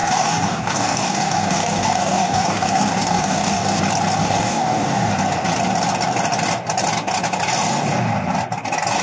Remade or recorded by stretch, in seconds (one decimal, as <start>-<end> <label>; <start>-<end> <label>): 0.0-3.8 remade; 3.8-4.2 recorded; 4.2-5.1 remade; 5.1-9.0 recorded